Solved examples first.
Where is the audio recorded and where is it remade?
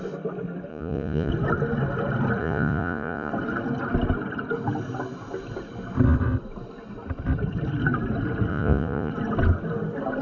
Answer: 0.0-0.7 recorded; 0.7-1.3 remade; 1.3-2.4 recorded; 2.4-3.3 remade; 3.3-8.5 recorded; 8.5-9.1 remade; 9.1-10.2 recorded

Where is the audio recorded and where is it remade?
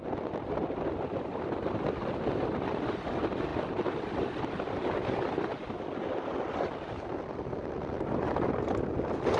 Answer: 0.0-9.4 recorded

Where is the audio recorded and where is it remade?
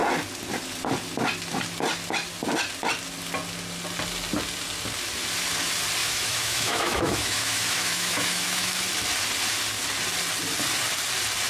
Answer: 0.0-6.0 recorded; 6.0-8.8 remade; 8.8-11.5 recorded